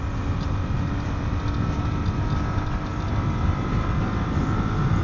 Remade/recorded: recorded